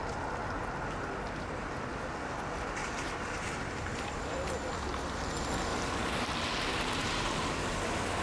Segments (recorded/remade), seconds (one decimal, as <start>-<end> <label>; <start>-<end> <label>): 0.0-2.8 recorded; 2.8-4.6 remade; 4.6-5.7 recorded; 5.7-6.3 remade; 6.3-6.7 recorded; 6.7-7.7 remade; 7.7-8.2 recorded